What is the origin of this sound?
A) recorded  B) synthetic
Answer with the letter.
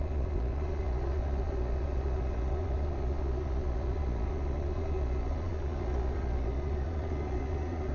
B